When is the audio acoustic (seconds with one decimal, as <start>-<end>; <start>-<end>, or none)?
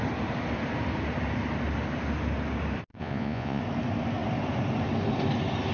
0.0-2.9; 3.6-5.7